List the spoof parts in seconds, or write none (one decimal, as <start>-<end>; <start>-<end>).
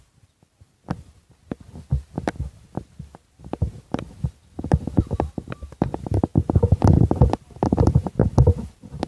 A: none